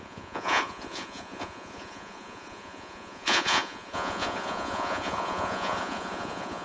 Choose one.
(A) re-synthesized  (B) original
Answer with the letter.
A